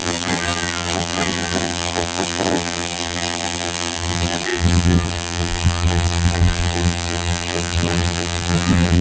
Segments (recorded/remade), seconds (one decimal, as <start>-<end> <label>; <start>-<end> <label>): 0.0-9.0 remade